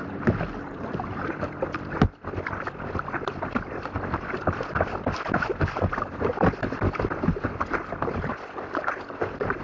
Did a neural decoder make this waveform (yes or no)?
no